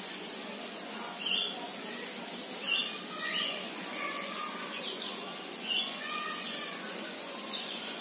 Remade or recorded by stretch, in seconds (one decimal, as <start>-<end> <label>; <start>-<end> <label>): 0.0-1.7 remade; 1.7-3.1 recorded; 3.1-8.0 remade